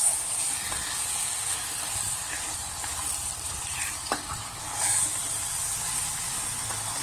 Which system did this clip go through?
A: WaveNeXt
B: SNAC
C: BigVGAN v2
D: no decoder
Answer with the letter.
C